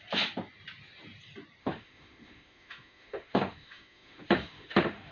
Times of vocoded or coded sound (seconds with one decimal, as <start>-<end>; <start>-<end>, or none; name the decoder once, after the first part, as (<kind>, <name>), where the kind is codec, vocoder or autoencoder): 1.6-5.1 (autoencoder, DAC-VAE)